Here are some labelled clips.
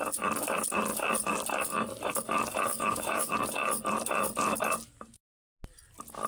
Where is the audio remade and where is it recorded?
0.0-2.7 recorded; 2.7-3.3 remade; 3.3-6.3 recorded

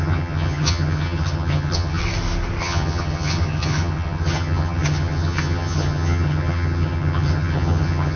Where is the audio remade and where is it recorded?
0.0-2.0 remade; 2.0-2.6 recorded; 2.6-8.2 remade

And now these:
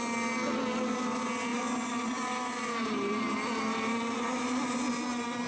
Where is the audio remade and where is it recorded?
0.0-5.5 recorded

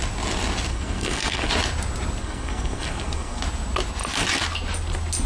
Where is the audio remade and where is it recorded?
0.0-0.7 recorded; 0.7-1.5 remade; 1.5-2.2 recorded; 2.2-3.4 remade; 3.4-5.3 recorded

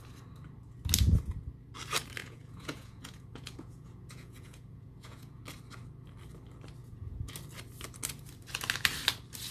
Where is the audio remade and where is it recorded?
0.0-2.2 recorded; 2.2-5.4 remade; 5.4-6.8 recorded; 6.8-7.3 remade; 7.3-9.5 recorded

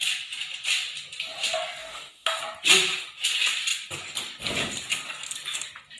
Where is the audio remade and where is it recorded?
0.0-1.8 recorded; 1.8-2.4 remade; 2.4-6.0 recorded